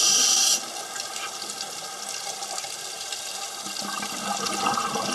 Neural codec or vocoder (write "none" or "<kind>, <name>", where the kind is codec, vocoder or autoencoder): none